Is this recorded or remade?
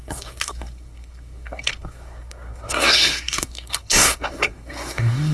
remade